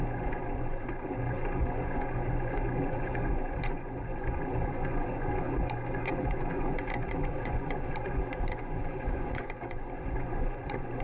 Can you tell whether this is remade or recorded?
remade